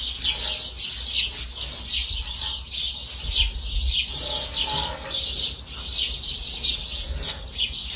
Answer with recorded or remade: recorded